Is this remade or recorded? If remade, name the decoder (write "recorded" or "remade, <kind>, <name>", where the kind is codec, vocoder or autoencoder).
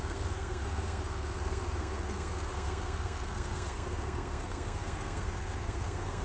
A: remade, codec, SNAC